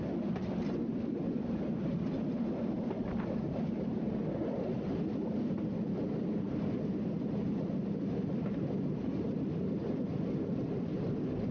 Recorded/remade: recorded